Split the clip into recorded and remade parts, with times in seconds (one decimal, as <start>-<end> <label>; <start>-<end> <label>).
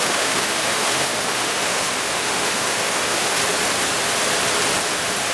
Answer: 0.0-3.4 remade; 3.4-5.3 recorded